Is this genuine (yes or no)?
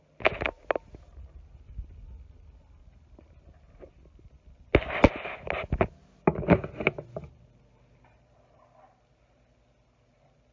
yes